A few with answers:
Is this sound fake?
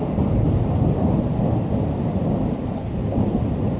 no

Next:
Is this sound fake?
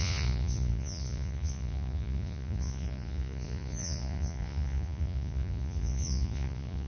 yes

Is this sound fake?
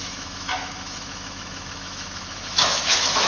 yes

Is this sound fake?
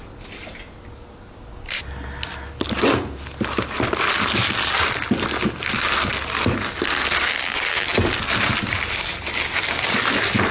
no